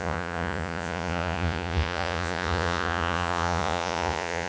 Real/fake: fake